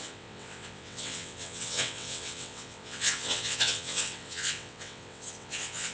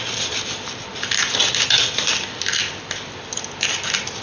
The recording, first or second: second